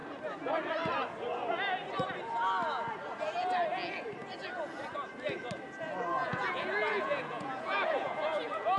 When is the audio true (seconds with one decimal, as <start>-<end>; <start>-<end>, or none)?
0.0-6.2